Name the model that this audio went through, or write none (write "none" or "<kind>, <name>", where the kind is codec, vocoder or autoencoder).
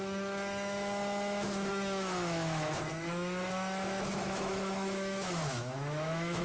autoencoder, DAC-VAE